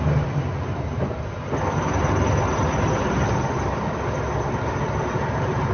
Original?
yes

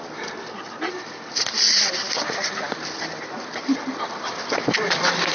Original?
no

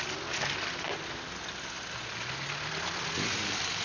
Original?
yes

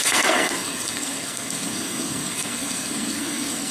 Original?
no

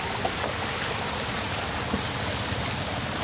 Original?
yes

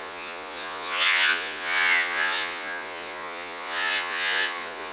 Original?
no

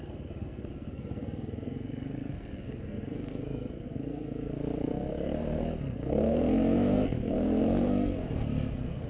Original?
no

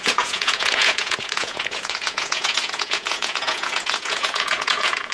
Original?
no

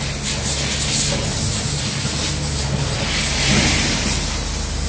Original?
yes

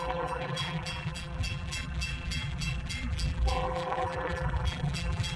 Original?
no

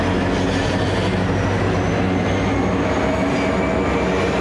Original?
yes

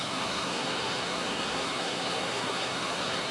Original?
no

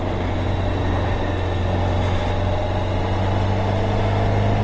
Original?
yes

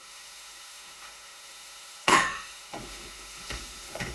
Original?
no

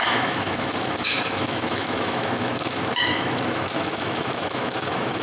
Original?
no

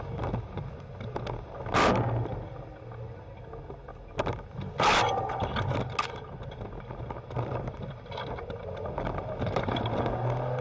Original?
yes